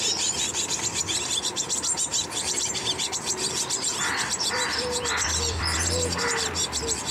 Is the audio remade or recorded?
remade